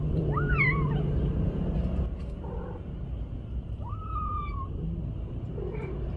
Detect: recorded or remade recorded